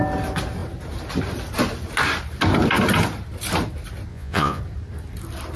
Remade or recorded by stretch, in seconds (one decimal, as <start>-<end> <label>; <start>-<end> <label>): 0.0-4.1 recorded; 4.1-4.6 remade; 4.6-5.6 recorded